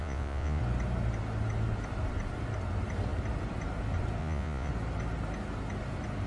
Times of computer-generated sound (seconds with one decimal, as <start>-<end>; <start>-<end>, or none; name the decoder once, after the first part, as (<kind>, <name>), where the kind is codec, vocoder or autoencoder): 0.0-0.6 (vocoder, Vocos); 4.2-4.7